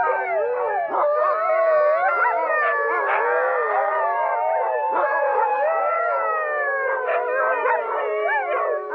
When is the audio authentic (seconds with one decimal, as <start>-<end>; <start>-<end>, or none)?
0.0-5.3; 6.3-8.9